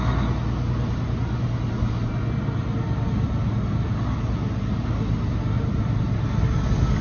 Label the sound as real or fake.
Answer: real